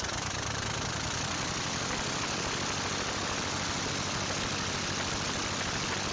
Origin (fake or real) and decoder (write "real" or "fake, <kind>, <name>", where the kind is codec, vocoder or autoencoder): real